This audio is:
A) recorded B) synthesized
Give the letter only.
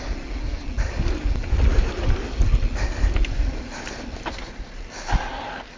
A